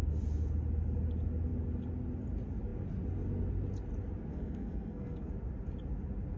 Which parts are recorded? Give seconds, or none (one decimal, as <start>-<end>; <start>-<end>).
0.0-4.3; 5.3-6.4